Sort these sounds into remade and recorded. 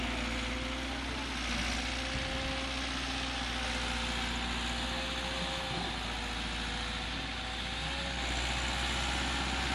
recorded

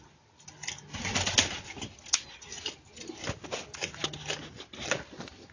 recorded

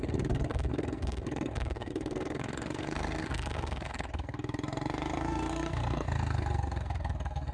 remade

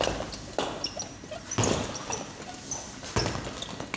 recorded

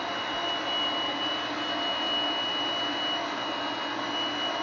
recorded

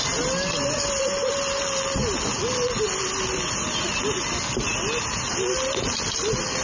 recorded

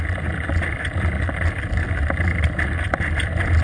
recorded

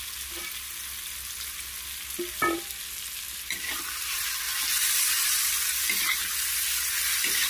recorded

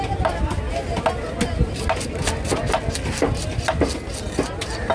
recorded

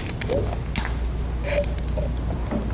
recorded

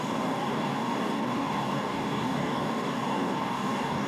remade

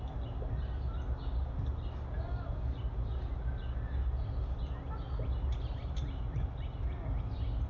recorded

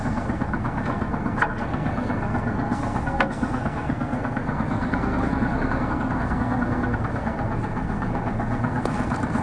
remade